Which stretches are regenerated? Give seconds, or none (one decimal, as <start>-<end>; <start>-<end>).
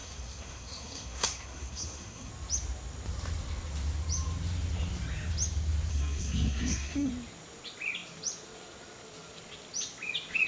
0.0-2.3; 5.9-7.1